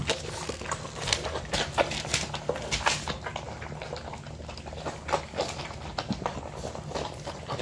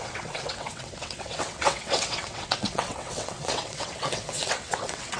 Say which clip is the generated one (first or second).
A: second